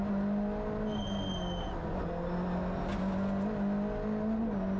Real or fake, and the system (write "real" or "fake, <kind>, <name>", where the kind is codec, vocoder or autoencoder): real